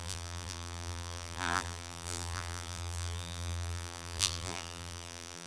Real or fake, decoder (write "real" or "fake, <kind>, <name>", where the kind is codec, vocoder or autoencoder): fake, vocoder, BigVGAN v2